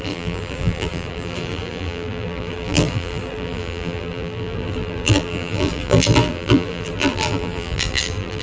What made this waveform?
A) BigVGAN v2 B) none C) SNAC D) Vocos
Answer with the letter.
A